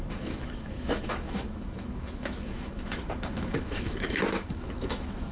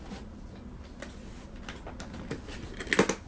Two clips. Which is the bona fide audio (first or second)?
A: second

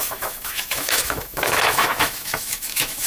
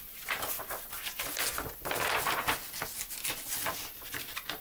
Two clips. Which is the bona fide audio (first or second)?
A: second